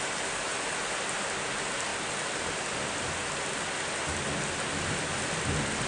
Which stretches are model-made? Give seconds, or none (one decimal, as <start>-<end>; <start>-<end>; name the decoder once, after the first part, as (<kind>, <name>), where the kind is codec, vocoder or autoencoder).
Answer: none